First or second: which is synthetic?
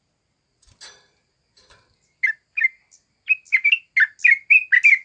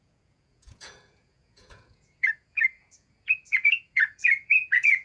second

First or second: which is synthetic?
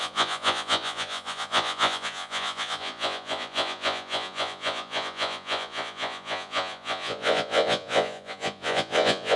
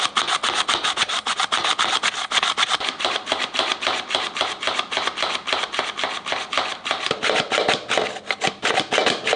first